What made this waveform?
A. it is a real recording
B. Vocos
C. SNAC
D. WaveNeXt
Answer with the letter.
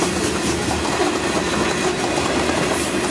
A